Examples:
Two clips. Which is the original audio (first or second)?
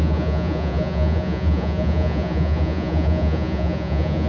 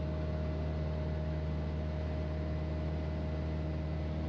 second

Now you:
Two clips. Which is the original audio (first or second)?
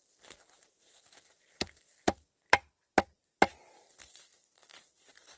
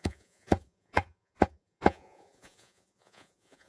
first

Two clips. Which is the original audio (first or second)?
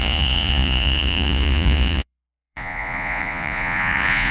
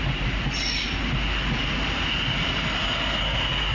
second